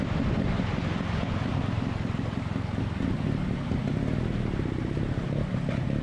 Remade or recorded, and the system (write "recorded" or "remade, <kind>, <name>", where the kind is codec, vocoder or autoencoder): recorded